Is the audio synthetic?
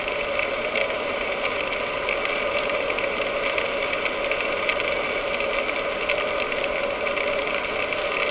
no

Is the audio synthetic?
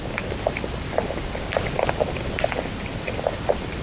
no